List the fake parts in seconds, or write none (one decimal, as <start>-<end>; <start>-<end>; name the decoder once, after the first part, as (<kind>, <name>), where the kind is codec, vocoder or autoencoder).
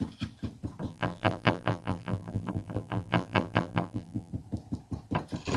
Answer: 0.9-4.3 (vocoder, BigVGAN v2)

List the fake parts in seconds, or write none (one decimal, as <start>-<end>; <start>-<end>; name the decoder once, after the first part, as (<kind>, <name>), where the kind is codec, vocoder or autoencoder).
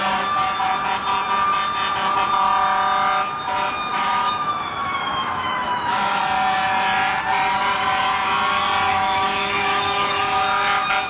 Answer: 3.9-6.2 (autoencoder, DAC-VAE); 8.9-10.4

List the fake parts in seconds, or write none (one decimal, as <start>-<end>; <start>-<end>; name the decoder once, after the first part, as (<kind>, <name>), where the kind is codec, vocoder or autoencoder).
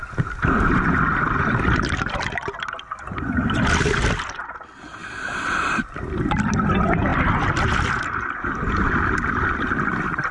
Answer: none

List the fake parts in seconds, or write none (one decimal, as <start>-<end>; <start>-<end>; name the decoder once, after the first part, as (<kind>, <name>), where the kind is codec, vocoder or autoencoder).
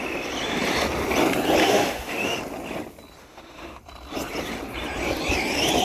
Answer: 1.6-2.4 (autoencoder, DAC-VAE); 3.2-3.8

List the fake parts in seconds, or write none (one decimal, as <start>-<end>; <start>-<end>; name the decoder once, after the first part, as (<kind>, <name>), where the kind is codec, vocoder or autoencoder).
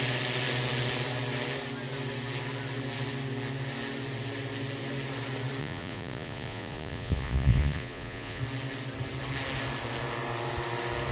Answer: 5.6-8.4 (vocoder, Vocos)